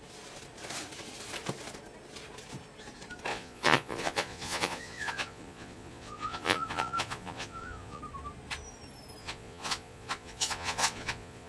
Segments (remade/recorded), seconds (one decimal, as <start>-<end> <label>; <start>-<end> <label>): 0.0-3.3 recorded; 3.3-8.0 remade; 8.0-9.2 recorded; 9.2-11.5 remade